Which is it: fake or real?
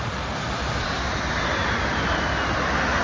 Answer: real